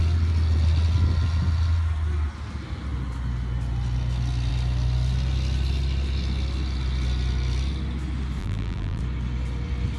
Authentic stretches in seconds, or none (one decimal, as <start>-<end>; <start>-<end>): 0.0-8.4; 9.0-10.0